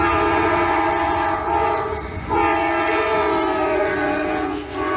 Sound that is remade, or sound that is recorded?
remade